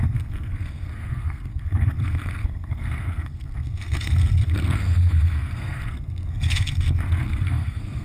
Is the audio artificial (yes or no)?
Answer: yes